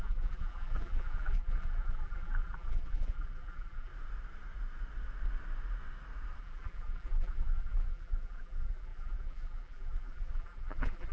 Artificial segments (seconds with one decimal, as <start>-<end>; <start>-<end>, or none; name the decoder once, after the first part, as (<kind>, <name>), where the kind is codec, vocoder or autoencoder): 0.0-3.9 (vocoder, BigVGAN v2); 6.4-11.1